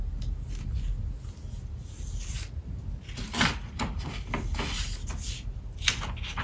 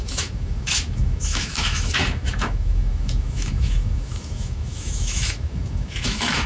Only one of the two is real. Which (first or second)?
first